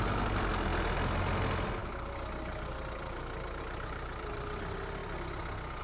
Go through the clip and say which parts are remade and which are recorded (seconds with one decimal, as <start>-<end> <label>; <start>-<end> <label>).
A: 0.0-5.8 recorded